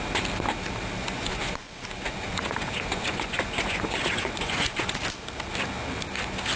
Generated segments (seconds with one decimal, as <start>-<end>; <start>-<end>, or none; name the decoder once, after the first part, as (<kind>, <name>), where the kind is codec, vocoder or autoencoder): 1.0-5.0 (vocoder, Vocos)